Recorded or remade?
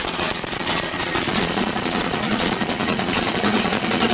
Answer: remade